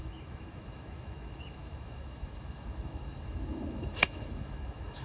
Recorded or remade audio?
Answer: remade